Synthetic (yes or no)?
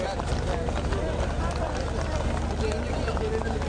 no